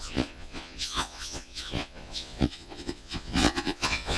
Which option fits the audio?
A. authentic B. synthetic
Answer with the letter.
B